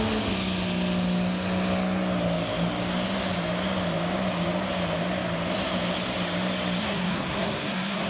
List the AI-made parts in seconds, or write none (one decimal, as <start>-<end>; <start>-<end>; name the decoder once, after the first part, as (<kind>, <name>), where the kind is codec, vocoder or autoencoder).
6.8-8.1 (codec, SNAC)